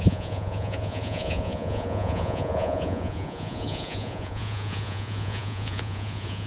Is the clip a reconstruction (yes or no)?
yes